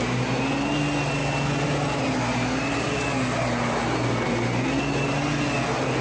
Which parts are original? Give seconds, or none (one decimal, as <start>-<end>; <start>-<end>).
0.0-6.0